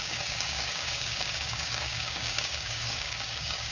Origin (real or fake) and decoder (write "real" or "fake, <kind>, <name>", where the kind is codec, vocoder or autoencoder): fake, codec, DAC